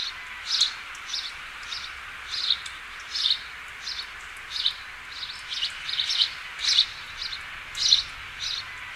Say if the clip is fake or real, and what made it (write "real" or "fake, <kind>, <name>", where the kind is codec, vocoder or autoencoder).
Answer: real